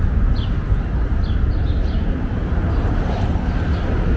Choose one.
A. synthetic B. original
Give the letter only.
B